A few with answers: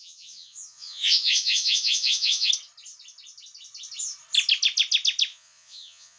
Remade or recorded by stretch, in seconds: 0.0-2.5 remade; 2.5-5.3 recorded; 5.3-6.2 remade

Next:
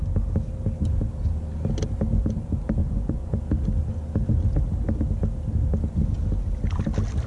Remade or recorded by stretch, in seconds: 0.0-2.8 recorded; 2.8-3.4 remade; 3.4-7.3 recorded

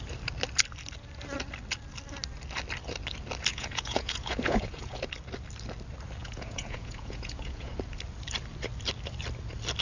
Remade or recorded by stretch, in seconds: 0.0-3.5 recorded; 3.5-5.0 remade; 5.0-6.2 recorded; 6.2-7.7 remade; 7.7-9.8 recorded

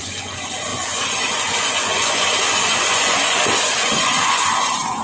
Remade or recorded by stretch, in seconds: 0.0-5.0 remade

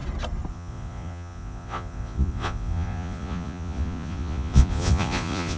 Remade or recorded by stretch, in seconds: 0.0-0.5 recorded; 0.5-5.6 remade

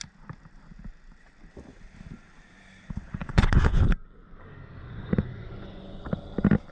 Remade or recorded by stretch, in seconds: 0.0-3.2 recorded; 3.2-3.8 remade; 3.8-4.8 recorded; 4.8-6.0 remade; 6.0-6.7 recorded

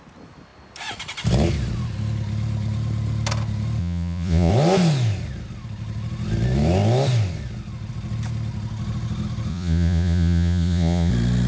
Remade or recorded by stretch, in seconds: 0.0-3.8 recorded; 3.8-4.5 remade; 4.5-9.5 recorded; 9.5-11.1 remade; 11.1-11.5 recorded

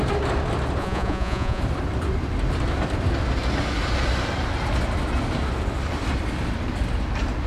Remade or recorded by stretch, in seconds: 0.0-0.8 recorded; 0.8-1.6 remade; 1.6-7.5 recorded